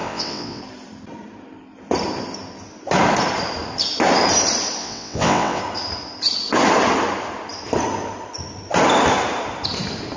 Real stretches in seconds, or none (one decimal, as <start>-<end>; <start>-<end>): 0.6-4.8; 5.6-10.2